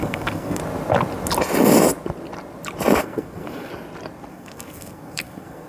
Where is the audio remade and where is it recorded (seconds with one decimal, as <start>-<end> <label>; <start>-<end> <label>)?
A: 0.0-0.6 remade; 0.6-3.0 recorded; 3.0-3.7 remade; 3.7-4.3 recorded; 4.3-5.7 remade